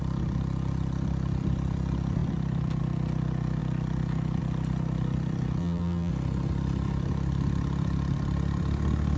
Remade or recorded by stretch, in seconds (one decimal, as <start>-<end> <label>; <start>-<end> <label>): 0.0-5.6 recorded; 5.6-6.1 remade; 6.1-9.2 recorded